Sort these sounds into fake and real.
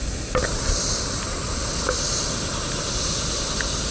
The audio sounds real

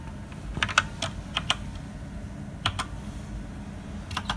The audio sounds real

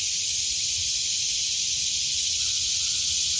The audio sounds real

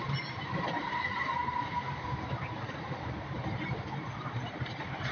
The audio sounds fake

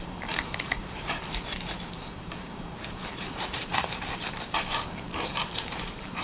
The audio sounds fake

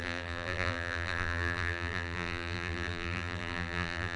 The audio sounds fake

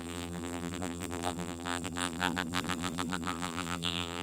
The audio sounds fake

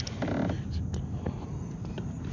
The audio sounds real